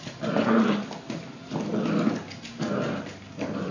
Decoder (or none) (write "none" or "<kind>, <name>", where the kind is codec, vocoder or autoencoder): none